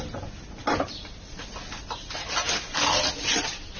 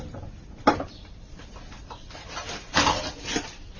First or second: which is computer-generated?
second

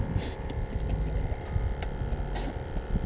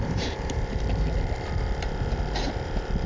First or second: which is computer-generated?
second